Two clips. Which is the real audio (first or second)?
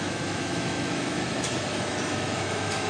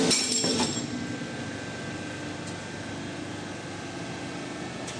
second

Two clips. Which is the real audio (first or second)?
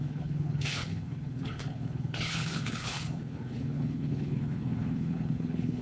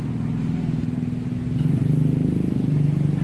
second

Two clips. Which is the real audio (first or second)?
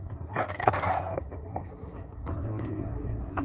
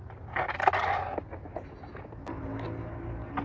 second